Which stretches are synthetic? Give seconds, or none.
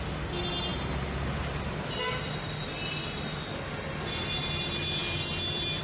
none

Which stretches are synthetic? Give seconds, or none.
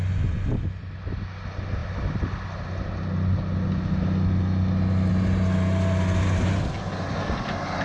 none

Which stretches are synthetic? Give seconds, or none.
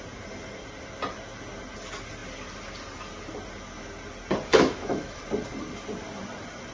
4.5-5.2 (autoencoder, DAC-VAE)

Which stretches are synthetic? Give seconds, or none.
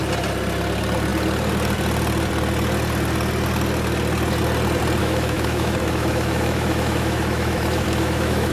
5.0-8.5 (autoencoder, DAC-VAE)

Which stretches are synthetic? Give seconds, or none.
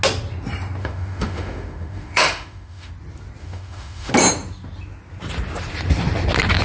0.8-2.9 (autoencoder, DAC-VAE); 3.4-4.1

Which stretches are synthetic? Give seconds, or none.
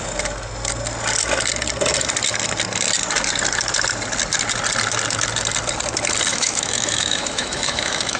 6.3-8.2 (autoencoder, DAC-VAE)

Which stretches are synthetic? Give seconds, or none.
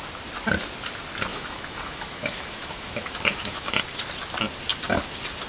1.3-3.8 (autoencoder, DAC-VAE)